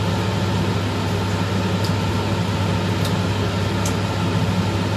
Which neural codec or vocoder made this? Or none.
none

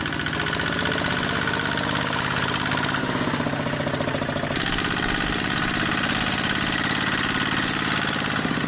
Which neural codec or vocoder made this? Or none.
none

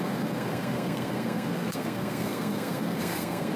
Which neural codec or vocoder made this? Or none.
codec, SNAC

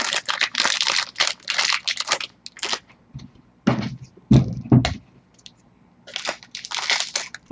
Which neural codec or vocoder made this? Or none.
none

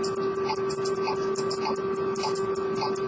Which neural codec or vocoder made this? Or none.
none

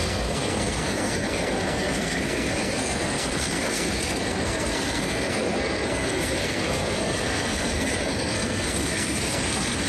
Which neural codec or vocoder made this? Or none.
codec, SNAC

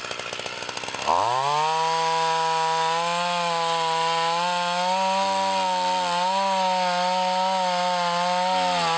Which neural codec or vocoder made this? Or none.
none